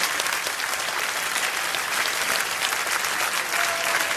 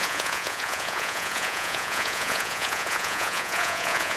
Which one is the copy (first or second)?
second